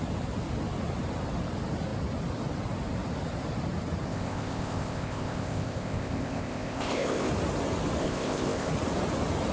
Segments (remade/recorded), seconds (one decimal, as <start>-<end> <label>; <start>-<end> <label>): 0.0-4.1 recorded; 4.1-7.3 remade; 7.3-8.0 recorded; 8.0-8.7 remade; 8.7-9.5 recorded